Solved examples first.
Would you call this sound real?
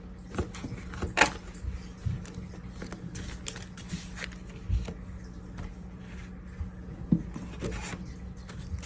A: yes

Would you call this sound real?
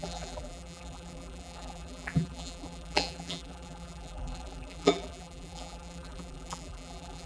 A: no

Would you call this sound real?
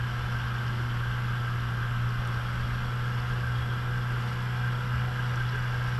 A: yes